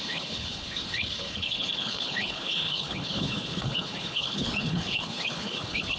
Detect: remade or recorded remade